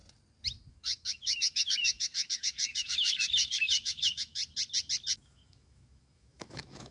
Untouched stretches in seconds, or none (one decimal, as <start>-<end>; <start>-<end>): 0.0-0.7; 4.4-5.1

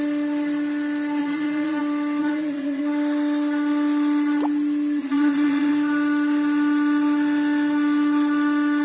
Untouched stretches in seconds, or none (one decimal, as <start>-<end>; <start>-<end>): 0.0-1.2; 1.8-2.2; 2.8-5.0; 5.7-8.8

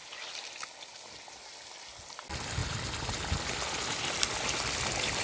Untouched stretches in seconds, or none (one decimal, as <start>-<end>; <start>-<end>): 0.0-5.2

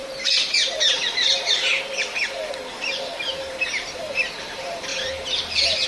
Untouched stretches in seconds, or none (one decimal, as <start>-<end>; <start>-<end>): 1.7-3.5

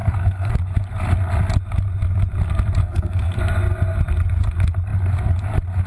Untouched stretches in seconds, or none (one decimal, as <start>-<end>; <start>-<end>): 0.5-2.8; 3.4-5.9

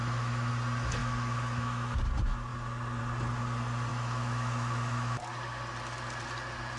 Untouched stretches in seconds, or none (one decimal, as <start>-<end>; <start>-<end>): 0.5-1.0; 2.0-3.9; 5.2-6.8

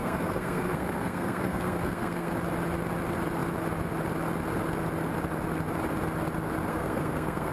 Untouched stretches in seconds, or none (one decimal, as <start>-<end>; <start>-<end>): 2.3-6.7